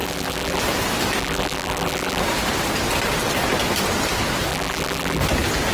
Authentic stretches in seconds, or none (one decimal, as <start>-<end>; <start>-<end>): 0.6-1.2; 2.2-4.5; 5.2-5.7